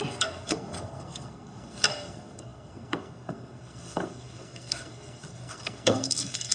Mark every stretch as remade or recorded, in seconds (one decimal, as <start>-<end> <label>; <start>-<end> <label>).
0.0-6.5 remade